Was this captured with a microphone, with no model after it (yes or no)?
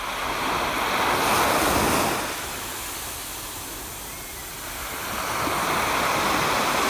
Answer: yes